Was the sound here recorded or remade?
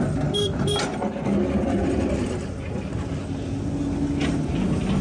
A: recorded